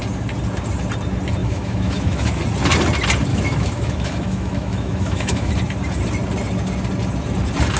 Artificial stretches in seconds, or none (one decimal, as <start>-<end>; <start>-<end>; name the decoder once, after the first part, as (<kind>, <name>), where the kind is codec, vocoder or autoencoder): 1.4-2.4 (autoencoder, DAC-VAE); 3.3-5.5